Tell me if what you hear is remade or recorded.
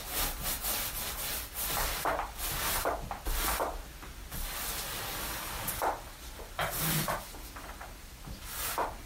recorded